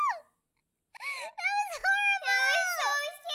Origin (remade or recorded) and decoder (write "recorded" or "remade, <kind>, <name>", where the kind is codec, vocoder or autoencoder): recorded